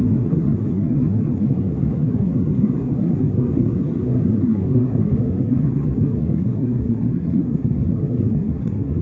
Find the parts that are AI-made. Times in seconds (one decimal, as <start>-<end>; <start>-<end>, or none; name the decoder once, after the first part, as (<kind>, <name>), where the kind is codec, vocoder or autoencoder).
0.0-9.0 (codec, SNAC)